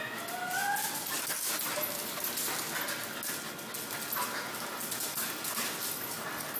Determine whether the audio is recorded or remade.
recorded